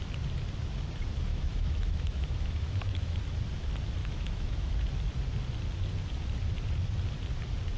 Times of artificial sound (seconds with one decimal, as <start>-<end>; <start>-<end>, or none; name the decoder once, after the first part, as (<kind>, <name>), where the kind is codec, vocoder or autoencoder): 1.3-3.2 (autoencoder, DAC-VAE); 4.0-4.7